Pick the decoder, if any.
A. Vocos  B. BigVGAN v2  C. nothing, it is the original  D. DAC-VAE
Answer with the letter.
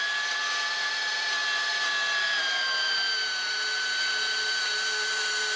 C